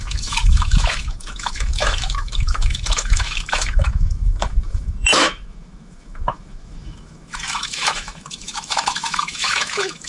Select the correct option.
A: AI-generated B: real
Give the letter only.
A